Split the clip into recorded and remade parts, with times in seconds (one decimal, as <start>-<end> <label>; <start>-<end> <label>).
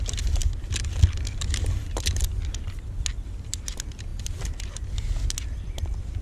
0.0-6.2 recorded